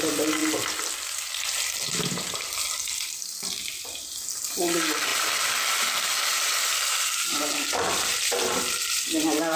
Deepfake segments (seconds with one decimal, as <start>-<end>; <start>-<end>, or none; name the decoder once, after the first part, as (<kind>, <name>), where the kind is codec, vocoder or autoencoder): 0.4-3.3 (vocoder, BigVGAN v2); 5.1-9.6